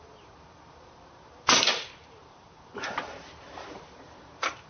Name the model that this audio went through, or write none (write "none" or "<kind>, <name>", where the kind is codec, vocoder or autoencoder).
vocoder, BigVGAN v2